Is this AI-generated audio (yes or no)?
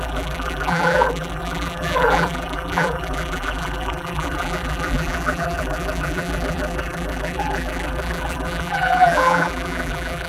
yes